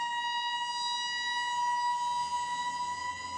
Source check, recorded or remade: recorded